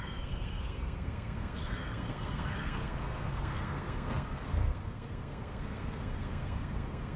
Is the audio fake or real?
fake